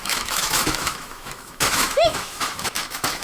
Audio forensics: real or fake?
fake